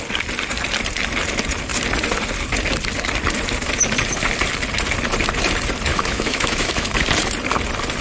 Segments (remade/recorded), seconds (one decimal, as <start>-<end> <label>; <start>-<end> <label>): 0.0-5.9 recorded; 5.9-7.0 remade; 7.0-8.0 recorded